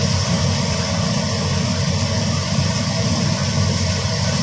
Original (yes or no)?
yes